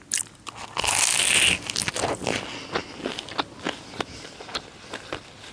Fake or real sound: real